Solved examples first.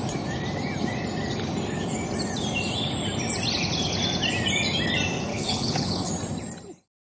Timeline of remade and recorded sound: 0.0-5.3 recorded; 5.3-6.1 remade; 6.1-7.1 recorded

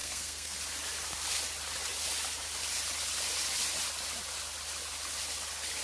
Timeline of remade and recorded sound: 0.0-0.6 remade; 0.6-5.8 recorded